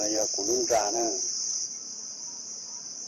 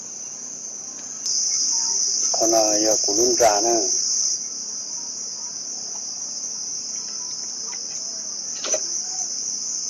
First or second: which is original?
second